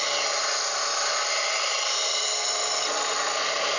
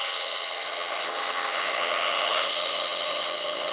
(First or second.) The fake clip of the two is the second